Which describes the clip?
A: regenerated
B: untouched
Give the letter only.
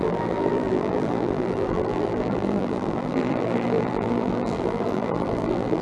A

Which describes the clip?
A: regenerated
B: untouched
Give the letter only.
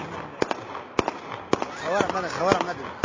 B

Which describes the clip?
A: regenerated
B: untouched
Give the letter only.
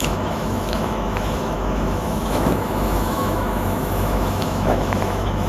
A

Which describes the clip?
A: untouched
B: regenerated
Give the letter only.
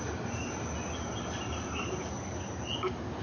A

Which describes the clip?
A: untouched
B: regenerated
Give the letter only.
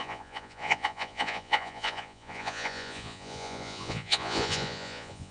B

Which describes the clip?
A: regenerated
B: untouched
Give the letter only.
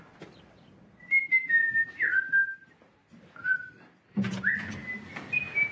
B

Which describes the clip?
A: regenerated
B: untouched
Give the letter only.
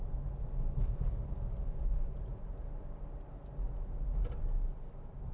B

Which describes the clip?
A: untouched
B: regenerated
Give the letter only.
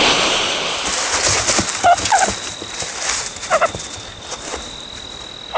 A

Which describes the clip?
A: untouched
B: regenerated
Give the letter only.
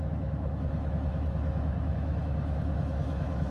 B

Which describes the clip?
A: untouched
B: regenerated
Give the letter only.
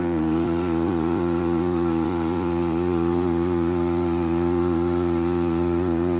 B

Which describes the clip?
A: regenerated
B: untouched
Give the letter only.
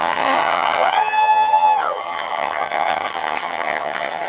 A